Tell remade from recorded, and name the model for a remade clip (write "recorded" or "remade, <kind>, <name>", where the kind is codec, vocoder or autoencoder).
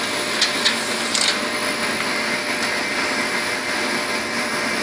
recorded